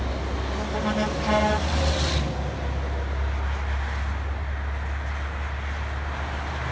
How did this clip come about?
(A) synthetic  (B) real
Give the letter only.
B